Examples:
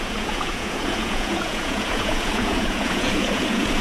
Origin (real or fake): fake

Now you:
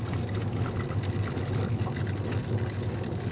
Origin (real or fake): real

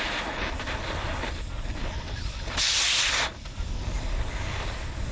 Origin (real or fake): real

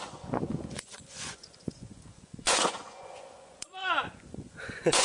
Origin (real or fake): fake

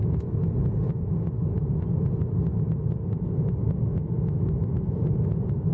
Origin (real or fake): real